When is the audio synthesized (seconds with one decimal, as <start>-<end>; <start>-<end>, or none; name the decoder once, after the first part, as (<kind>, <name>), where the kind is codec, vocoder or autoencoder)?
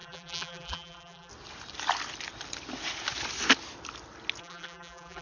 0.0-1.3 (vocoder, BigVGAN v2); 4.4-5.2